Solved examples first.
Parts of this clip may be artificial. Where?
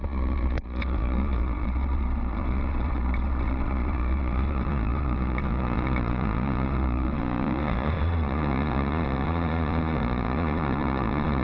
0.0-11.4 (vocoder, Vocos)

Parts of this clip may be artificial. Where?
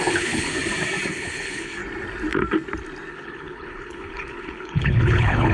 0.0-0.5 (codec, HILCodec); 1.1-1.8; 3.1-5.5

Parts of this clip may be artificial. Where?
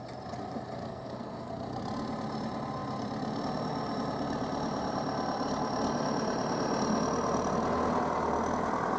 0.9-1.5 (codec, SNAC)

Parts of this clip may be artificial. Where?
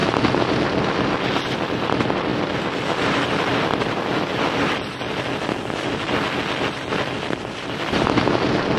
0.0-8.8 (vocoder, BigVGAN v2)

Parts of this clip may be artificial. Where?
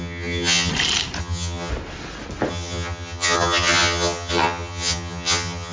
0.0-0.7 (vocoder, HiFi-GAN); 1.2-1.7; 2.5-5.7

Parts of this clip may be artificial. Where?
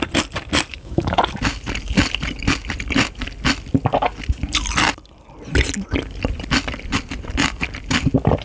0.7-1.2 (autoencoder, DAC-VAE)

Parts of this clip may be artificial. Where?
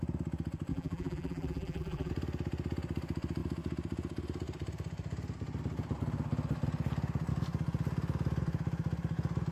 0.7-2.1 (vocoder, BigVGAN v2)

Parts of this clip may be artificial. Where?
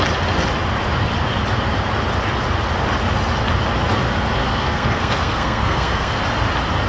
4.4-6.2 (codec, SNAC)